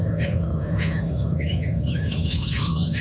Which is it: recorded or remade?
remade